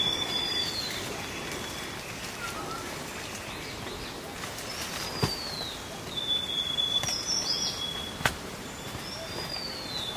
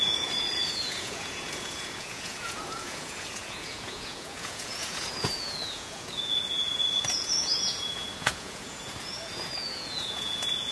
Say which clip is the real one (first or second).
first